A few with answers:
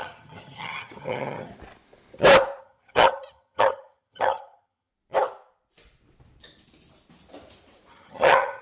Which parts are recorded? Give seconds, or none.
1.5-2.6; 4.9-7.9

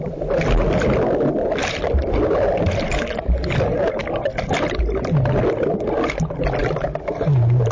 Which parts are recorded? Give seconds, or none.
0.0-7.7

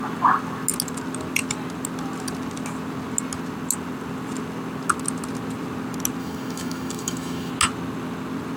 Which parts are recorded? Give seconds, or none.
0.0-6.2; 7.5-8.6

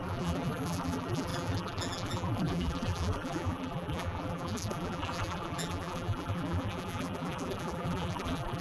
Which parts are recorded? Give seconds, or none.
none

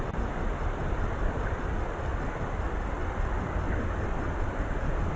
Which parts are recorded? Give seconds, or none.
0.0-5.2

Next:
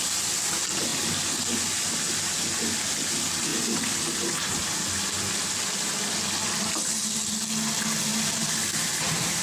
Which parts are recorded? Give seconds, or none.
0.0-9.4